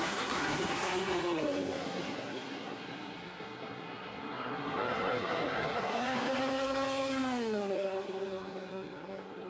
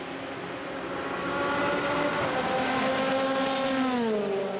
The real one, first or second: second